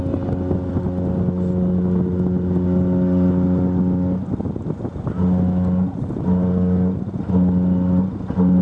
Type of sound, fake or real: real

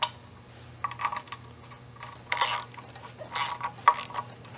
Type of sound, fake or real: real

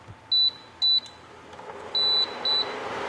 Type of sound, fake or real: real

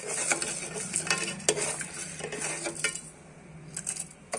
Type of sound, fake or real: real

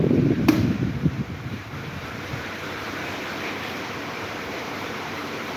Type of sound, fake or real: fake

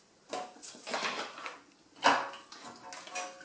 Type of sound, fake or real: real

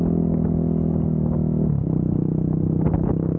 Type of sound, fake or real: real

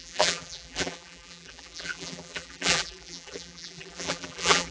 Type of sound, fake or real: fake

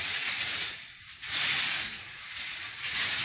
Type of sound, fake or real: fake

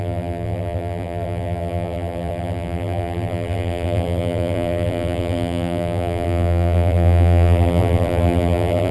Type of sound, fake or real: fake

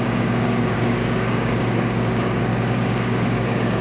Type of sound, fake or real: fake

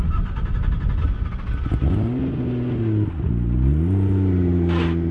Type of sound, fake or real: real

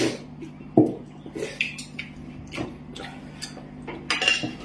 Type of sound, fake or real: real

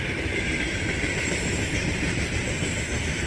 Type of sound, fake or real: fake